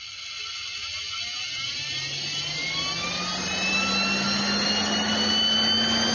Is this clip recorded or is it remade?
recorded